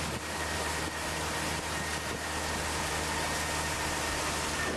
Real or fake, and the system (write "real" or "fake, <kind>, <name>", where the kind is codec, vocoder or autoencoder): real